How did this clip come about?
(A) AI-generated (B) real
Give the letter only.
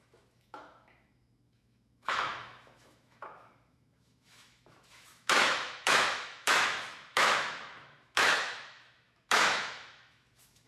A